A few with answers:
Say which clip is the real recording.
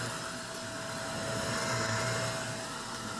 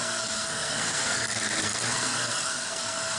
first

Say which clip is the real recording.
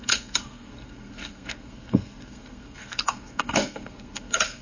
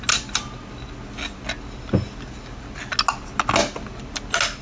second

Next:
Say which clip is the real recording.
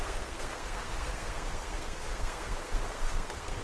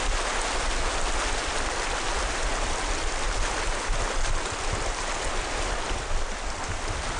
second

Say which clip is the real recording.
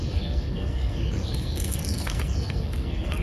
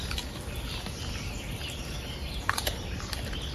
second